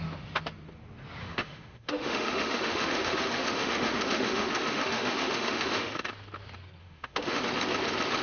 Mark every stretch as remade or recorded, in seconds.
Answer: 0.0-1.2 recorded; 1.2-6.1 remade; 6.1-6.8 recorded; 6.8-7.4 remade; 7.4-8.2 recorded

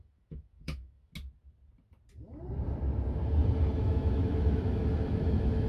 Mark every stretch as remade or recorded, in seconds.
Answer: 0.0-1.1 remade; 1.1-3.8 recorded; 3.8-5.7 remade